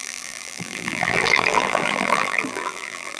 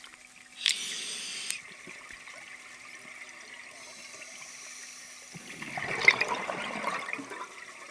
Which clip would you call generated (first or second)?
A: first